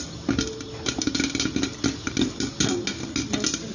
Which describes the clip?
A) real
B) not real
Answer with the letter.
A